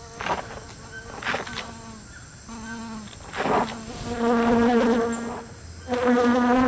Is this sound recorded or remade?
recorded